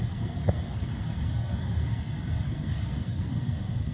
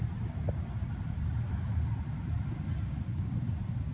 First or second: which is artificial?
first